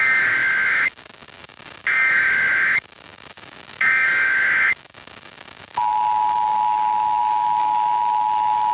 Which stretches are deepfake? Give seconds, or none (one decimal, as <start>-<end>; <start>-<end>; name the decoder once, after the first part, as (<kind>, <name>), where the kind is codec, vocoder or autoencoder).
0.0-8.7 (codec, DAC)